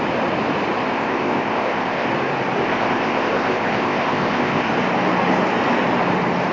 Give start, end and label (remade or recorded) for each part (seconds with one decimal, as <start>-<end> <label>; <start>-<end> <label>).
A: 0.0-0.9 recorded; 0.9-2.1 remade; 2.1-2.6 recorded; 2.6-4.7 remade; 4.7-6.5 recorded